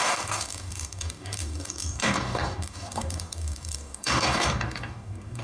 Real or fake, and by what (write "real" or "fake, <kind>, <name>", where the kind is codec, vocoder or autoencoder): fake, codec, DAC